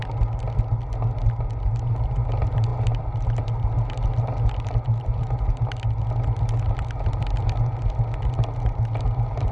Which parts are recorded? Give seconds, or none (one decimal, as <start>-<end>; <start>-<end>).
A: 0.0-9.5